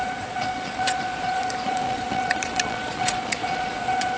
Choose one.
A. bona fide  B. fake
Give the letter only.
B